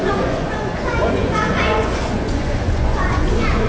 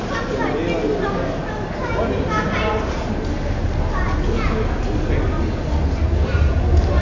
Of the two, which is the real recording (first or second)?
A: second